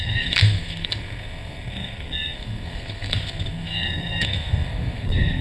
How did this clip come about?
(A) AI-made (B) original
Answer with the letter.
A